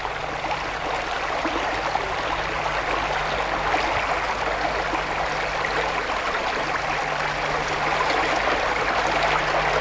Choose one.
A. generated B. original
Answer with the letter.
B